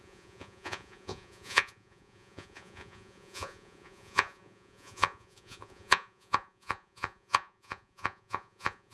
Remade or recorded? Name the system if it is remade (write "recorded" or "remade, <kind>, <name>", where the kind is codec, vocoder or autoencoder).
remade, vocoder, Vocos